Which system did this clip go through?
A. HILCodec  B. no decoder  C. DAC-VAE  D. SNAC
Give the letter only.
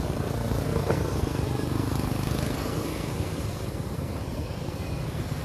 D